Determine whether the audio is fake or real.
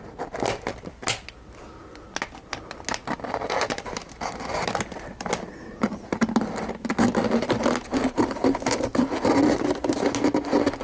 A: real